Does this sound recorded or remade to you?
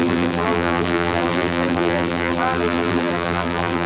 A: remade